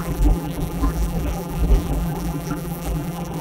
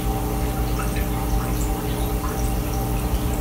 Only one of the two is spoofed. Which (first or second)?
first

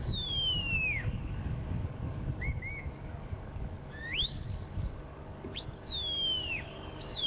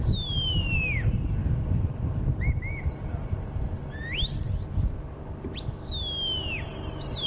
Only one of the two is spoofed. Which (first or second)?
first